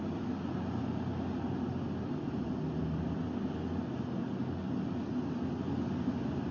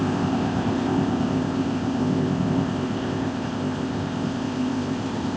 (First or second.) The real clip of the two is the first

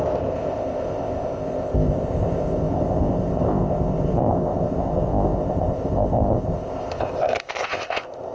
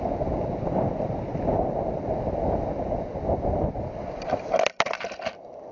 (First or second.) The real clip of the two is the second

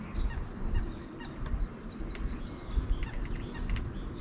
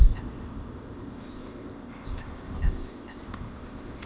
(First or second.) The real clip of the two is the first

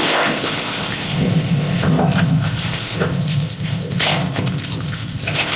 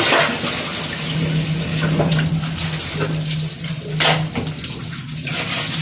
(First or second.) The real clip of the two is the second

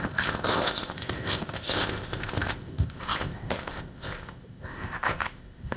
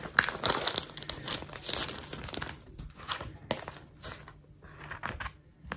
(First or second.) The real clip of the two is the second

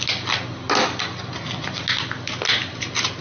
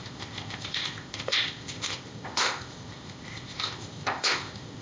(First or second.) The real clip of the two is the first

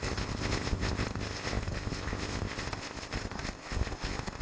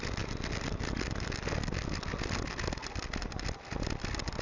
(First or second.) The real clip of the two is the second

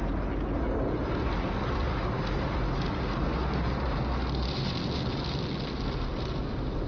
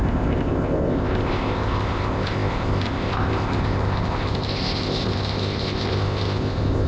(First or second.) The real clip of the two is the first